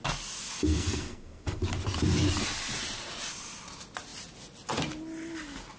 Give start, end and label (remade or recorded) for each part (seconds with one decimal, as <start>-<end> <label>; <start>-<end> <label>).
0.0-0.6 recorded; 0.6-1.6 remade; 1.6-5.8 recorded

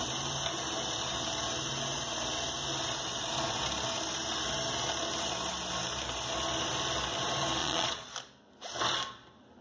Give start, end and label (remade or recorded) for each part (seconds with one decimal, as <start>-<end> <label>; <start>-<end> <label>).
0.0-7.6 recorded; 7.6-8.1 remade; 8.1-9.6 recorded

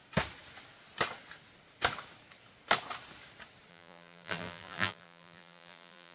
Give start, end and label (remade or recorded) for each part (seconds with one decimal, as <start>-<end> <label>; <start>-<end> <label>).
0.0-3.7 recorded; 3.7-6.1 remade

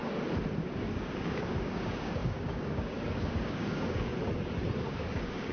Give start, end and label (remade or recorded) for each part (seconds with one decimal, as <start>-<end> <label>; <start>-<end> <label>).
0.0-0.6 recorded; 0.6-4.1 remade; 4.1-4.8 recorded; 4.8-5.5 remade

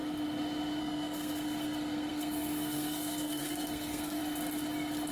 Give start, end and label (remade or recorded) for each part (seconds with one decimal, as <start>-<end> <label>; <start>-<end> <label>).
0.0-0.8 recorded; 0.8-4.2 remade; 4.2-5.1 recorded